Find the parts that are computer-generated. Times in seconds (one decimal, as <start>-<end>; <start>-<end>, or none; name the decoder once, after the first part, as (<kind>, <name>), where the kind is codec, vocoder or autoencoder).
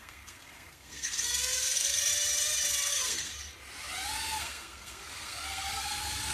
0.0-2.1 (codec, SNAC); 2.9-3.3; 4.4-6.3